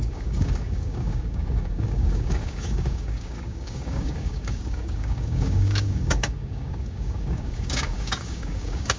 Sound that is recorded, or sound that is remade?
remade